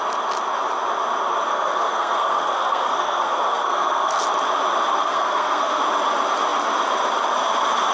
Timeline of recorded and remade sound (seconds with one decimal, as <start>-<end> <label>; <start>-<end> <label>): 0.0-1.5 recorded; 1.5-4.2 remade; 4.2-5.0 recorded; 5.0-5.8 remade; 5.8-7.9 recorded